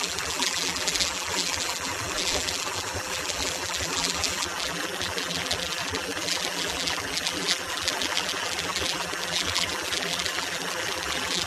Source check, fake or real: fake